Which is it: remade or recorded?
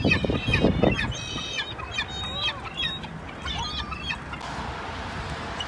recorded